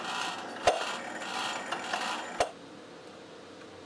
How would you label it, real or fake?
real